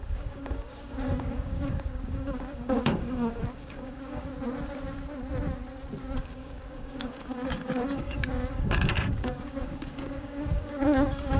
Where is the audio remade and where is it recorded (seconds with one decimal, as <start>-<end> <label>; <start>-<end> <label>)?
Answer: 0.0-4.3 remade; 4.3-6.2 recorded; 6.2-11.4 remade

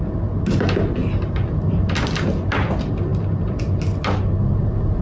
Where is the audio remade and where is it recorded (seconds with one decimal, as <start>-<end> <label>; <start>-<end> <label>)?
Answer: 0.0-5.0 recorded